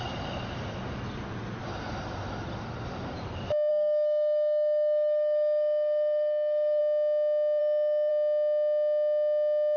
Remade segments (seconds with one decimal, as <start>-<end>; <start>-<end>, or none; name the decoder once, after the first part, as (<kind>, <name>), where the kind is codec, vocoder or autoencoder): 3.7-6.8 (codec, DAC); 7.6-8.1